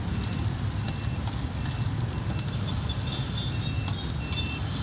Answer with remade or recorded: recorded